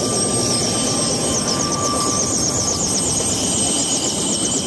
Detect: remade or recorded recorded